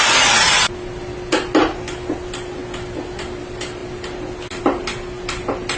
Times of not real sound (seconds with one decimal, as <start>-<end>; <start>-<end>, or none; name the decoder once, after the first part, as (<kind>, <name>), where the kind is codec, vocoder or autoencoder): none